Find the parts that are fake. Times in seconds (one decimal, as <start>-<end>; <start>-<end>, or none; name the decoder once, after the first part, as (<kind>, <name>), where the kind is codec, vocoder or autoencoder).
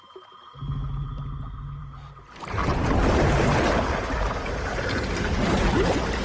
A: 1.8-5.5 (vocoder, BigVGAN v2)